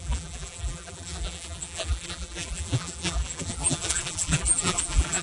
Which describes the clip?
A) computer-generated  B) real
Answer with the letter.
A